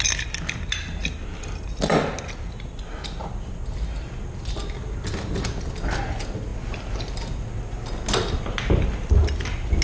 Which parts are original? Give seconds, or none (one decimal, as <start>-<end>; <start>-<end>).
0.0-9.8